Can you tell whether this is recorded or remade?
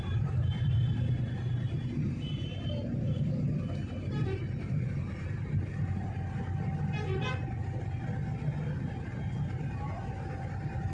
recorded